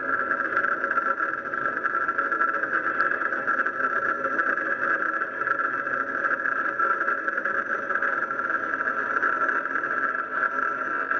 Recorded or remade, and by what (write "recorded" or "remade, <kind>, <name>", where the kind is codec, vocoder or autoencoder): recorded